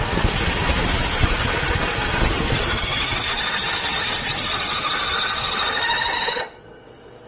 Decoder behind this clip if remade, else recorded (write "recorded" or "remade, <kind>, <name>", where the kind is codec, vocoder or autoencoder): recorded